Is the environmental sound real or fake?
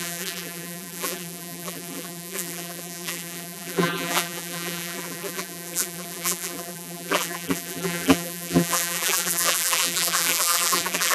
fake